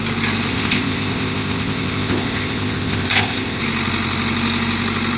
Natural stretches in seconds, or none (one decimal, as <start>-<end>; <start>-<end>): 0.0-0.5; 3.6-5.2